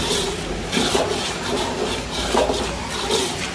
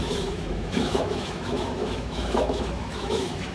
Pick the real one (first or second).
first